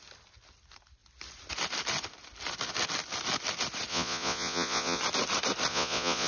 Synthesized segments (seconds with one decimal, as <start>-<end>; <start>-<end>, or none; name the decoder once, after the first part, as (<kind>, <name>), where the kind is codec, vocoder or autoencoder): 3.9-5.0 (vocoder, Vocos); 5.7-6.3